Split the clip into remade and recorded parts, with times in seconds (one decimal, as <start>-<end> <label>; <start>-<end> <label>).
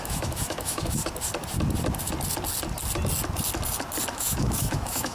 0.0-1.0 remade; 1.0-4.1 recorded; 4.1-5.1 remade